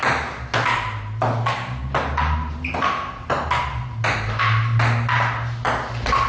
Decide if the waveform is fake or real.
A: real